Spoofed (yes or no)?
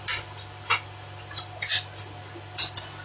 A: no